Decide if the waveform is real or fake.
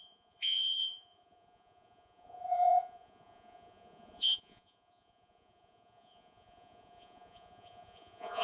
fake